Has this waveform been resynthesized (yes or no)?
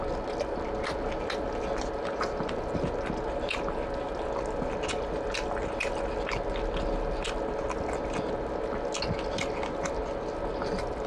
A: no